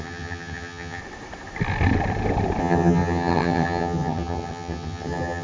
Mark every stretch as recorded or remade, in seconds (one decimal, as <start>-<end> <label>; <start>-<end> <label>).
0.0-1.0 remade; 1.0-2.6 recorded; 2.6-5.4 remade